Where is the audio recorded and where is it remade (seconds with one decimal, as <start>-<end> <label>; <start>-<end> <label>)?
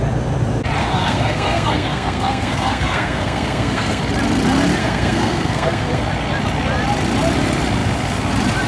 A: 0.0-0.8 recorded; 0.8-4.0 remade; 4.0-4.8 recorded; 4.8-6.0 remade; 6.0-8.7 recorded